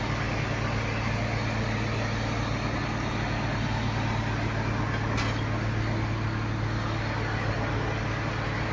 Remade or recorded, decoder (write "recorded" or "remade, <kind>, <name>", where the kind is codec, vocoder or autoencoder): recorded